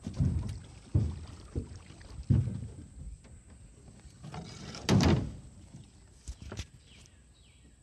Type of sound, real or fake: real